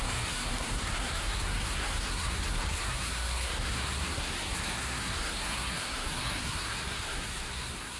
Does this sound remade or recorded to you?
remade